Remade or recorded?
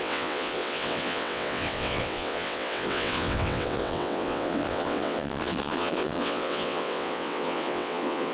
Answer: remade